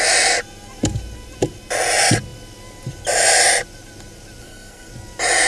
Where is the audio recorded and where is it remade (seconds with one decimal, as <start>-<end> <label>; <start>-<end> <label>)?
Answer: 0.0-4.4 recorded; 4.4-4.9 remade; 4.9-5.5 recorded